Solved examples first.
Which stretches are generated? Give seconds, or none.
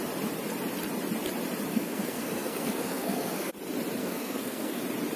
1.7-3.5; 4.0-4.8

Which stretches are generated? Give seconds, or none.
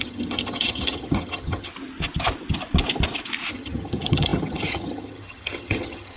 0.0-1.7; 3.5-6.2